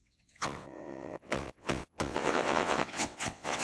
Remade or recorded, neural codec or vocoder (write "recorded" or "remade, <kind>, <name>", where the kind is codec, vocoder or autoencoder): remade, vocoder, WaveNeXt